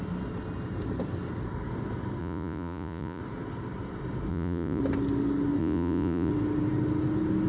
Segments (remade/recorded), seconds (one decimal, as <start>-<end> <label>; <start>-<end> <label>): 0.0-2.2 recorded; 2.2-3.2 remade; 3.2-4.3 recorded; 4.3-4.8 remade; 4.8-5.6 recorded; 5.6-6.3 remade; 6.3-7.5 recorded